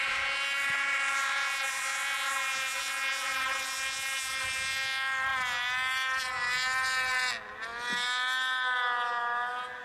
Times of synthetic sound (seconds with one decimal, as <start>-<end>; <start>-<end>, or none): none